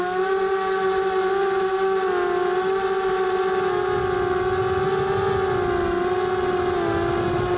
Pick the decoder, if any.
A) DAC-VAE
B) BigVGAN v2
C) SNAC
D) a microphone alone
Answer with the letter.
D